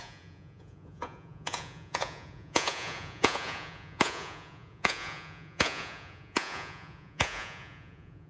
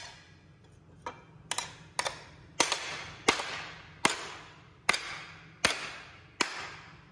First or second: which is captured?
second